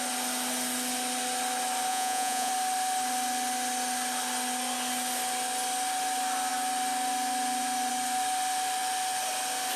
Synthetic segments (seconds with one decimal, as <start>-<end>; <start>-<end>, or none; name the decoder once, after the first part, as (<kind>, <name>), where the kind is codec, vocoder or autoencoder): 1.9-2.5 (vocoder, Vocos)

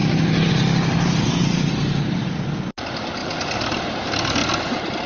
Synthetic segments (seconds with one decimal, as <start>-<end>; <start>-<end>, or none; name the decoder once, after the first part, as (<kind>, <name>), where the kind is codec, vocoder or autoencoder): none

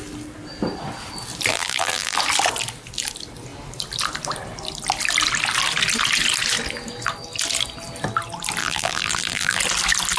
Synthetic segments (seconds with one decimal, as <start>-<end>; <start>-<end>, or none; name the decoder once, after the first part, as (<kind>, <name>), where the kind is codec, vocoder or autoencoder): 1.5-2.2 (vocoder, BigVGAN v2); 8.6-9.6

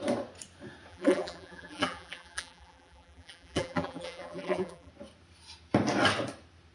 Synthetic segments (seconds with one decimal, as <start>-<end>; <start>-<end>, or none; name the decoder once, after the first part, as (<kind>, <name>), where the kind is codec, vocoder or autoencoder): 0.9-4.9 (vocoder, BigVGAN v2)

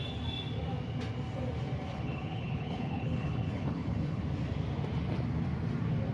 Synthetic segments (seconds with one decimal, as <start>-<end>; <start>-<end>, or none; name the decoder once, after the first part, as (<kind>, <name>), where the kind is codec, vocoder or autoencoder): 1.9-4.2 (codec, HILCodec)

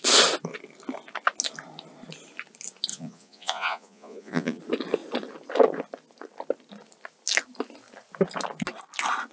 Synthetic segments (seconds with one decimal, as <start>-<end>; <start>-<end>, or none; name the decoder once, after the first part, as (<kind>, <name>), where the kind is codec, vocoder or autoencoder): 2.9-4.6 (vocoder, Vocos)

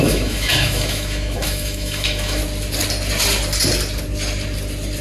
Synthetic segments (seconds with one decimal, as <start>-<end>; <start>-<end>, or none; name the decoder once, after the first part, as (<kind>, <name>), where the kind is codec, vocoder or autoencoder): 0.0-2.4 (autoencoder, DAC-VAE)